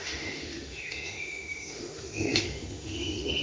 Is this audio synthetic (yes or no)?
yes